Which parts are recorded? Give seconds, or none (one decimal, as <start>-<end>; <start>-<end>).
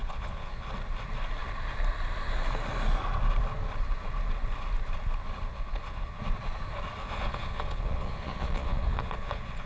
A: 0.7-5.5; 6.2-7.0